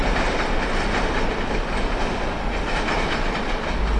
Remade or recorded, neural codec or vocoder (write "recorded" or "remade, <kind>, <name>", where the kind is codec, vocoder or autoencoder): recorded